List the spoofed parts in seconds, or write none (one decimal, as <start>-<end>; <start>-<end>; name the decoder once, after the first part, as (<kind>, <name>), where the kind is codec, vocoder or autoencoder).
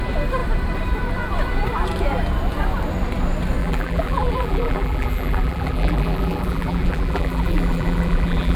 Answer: 3.6-8.6 (vocoder, BigVGAN v2)